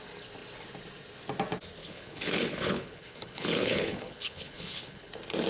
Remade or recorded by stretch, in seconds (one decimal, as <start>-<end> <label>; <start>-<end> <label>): 0.0-1.8 recorded; 1.8-5.1 remade; 5.1-5.5 recorded